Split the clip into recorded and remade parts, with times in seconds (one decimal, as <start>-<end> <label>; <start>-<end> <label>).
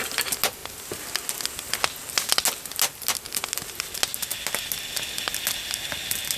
0.0-6.4 recorded